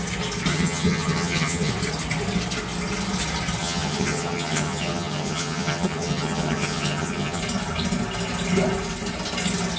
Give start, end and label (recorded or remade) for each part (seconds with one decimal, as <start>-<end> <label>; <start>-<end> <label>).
0.0-0.5 recorded; 0.5-1.7 remade; 1.7-3.6 recorded; 3.6-7.4 remade; 7.4-9.8 recorded